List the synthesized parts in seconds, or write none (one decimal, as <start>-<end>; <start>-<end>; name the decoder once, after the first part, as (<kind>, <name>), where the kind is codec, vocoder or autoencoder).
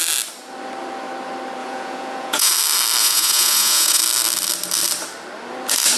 1.6-2.5 (vocoder, Vocos); 3.0-4.0